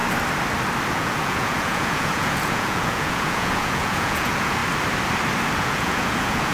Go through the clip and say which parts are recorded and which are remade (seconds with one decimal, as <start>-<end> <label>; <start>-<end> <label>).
0.0-0.9 recorded; 0.9-4.6 remade; 4.6-5.6 recorded; 5.6-6.5 remade